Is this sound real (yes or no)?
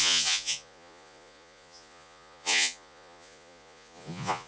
no